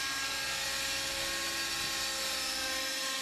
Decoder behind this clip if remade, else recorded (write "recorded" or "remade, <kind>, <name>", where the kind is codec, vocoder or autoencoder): recorded